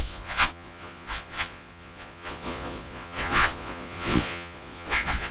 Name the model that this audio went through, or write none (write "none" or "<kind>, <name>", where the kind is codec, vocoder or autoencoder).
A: vocoder, Vocos